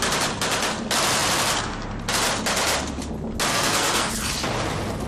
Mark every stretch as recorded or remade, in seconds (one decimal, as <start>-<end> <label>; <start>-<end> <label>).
0.0-3.5 recorded; 3.5-4.1 remade; 4.1-5.1 recorded